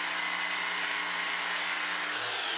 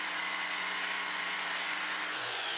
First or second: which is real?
first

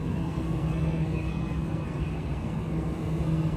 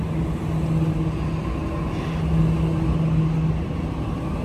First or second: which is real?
second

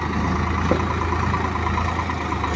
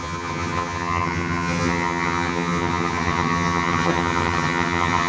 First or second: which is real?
first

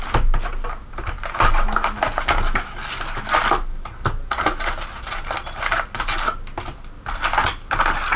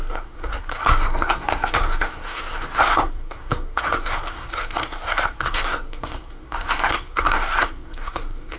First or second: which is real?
first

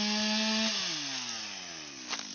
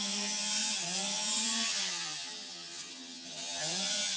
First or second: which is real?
first